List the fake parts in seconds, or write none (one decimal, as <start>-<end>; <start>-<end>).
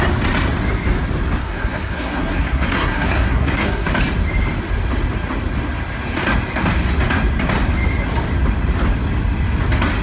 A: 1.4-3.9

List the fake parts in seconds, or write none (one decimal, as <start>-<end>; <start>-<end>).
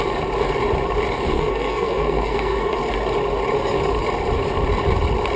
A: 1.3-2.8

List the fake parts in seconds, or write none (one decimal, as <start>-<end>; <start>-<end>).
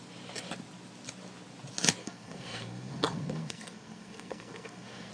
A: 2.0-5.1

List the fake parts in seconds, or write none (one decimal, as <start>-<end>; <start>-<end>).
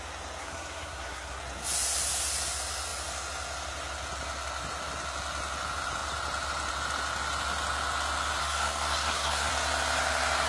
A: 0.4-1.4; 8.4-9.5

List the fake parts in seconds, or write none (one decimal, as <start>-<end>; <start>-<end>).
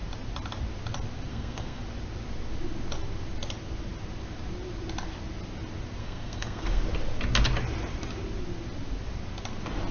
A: 1.3-1.8; 6.0-6.8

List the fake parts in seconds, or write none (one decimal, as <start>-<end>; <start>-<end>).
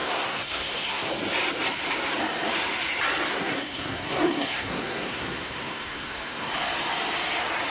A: 0.0-1.1; 3.3-6.5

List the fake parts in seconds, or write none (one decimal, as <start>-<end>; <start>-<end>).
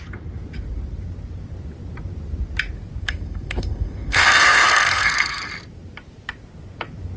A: 3.0-5.5